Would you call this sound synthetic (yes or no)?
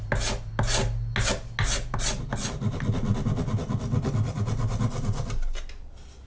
no